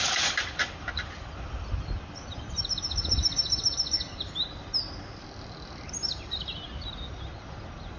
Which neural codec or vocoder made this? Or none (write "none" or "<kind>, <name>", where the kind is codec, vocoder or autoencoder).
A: none